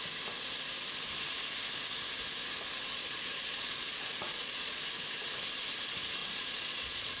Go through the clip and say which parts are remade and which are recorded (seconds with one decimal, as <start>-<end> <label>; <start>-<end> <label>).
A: 0.0-2.9 recorded; 2.9-4.8 remade; 4.8-6.2 recorded; 6.2-7.2 remade